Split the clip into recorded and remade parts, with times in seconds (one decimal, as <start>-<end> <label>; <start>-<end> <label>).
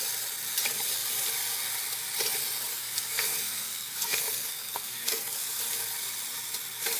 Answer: 0.0-2.7 recorded; 2.7-5.6 remade; 5.6-7.0 recorded